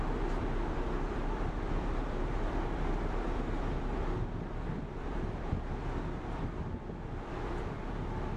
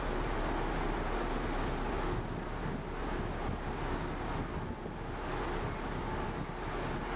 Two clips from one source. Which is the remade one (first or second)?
first